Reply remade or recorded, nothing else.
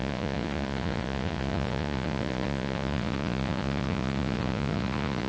remade